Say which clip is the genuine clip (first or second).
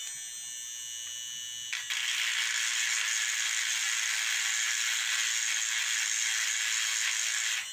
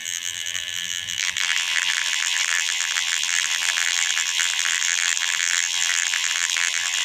first